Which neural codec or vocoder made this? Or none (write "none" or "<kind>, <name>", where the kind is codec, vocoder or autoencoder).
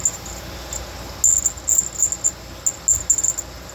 none